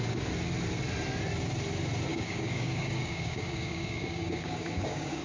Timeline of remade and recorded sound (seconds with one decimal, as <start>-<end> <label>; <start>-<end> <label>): 0.0-2.1 recorded; 2.1-5.2 remade